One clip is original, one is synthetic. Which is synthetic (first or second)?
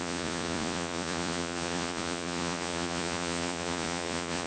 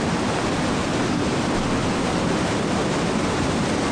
first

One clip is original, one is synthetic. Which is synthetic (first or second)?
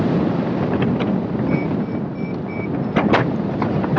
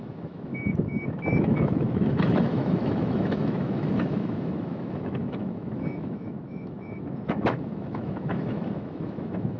second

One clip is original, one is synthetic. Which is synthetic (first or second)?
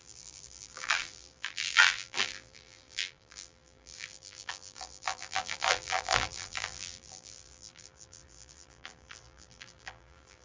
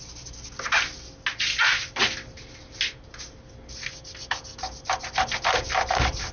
first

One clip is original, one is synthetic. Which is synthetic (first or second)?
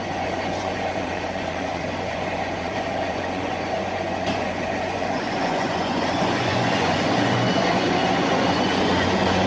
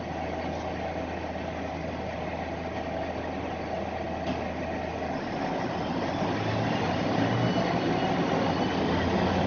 first